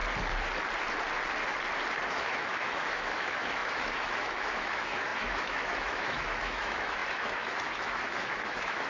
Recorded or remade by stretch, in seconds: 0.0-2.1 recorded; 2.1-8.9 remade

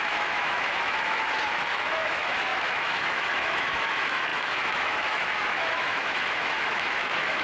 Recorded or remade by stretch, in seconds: 0.0-7.4 remade

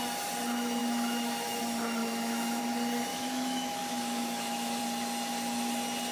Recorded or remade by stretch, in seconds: 0.0-0.8 recorded; 0.8-1.6 remade; 1.6-2.0 recorded; 2.0-2.6 remade; 2.6-3.1 recorded; 3.1-4.8 remade; 4.8-6.1 recorded

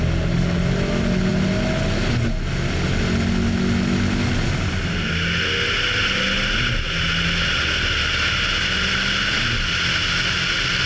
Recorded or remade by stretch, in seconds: 0.0-10.9 recorded

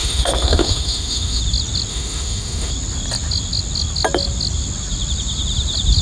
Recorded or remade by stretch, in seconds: 0.0-1.4 remade; 1.4-1.9 recorded; 1.9-2.7 remade; 2.7-6.0 recorded

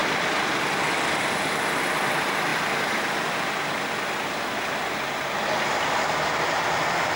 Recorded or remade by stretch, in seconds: 0.0-7.2 recorded